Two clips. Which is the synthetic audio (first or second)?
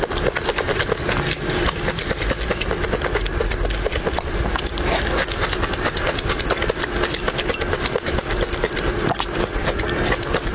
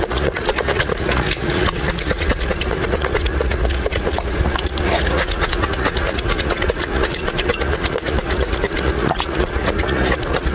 second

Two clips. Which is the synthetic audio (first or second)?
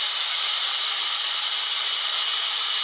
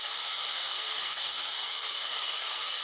second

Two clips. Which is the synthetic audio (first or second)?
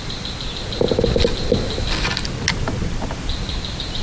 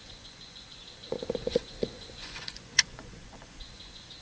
second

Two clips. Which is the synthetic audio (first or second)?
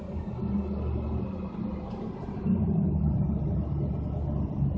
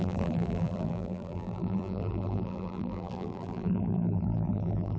second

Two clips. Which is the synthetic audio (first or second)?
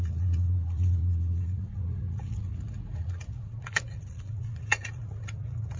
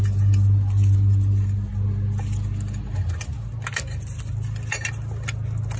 first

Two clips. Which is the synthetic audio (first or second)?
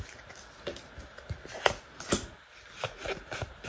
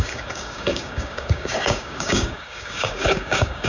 second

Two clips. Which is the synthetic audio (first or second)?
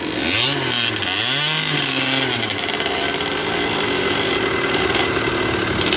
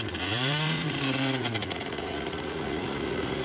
second